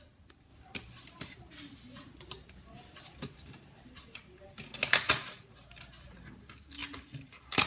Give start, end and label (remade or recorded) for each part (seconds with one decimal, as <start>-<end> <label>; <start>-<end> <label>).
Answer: 0.0-7.7 recorded